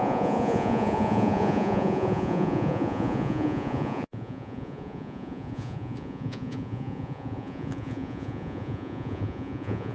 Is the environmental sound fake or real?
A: fake